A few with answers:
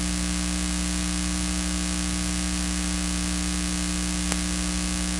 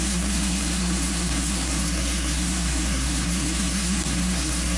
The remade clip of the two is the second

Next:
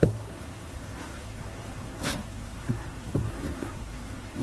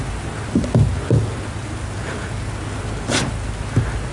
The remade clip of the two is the first